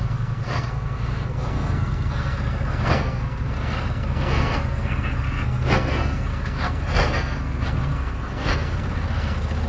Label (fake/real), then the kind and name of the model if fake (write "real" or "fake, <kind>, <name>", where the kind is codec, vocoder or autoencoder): fake, codec, SNAC